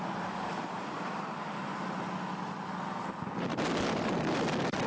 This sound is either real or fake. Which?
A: real